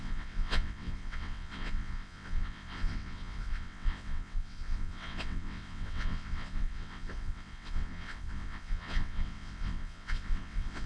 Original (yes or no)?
no